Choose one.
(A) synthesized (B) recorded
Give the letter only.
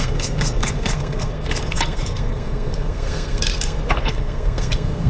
A